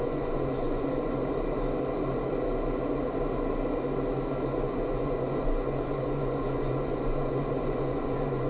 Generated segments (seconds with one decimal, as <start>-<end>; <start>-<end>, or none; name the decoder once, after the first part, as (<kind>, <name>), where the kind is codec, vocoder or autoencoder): 0.0-1.2 (vocoder, Vocos); 4.6-8.5